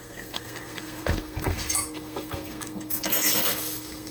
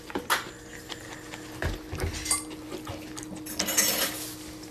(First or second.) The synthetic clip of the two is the first